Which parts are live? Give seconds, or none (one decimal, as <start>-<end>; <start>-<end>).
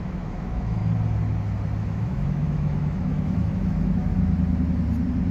0.8-1.8; 4.1-5.3